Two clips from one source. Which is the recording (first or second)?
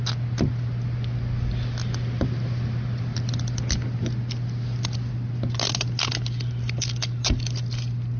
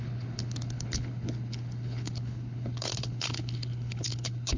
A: first